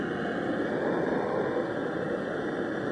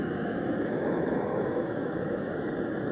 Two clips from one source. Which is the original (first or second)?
first